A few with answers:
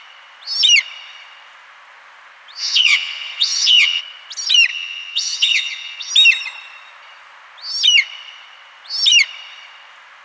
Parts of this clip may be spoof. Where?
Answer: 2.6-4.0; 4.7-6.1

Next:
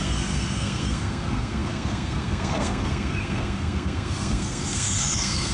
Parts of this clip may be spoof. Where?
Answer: 0.0-5.5